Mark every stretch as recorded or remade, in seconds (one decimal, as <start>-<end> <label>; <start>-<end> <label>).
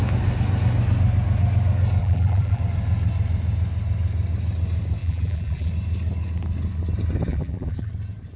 0.0-2.0 recorded; 2.0-2.6 remade; 2.6-5.0 recorded; 5.0-5.7 remade; 5.7-7.3 recorded; 7.3-7.9 remade; 7.9-8.4 recorded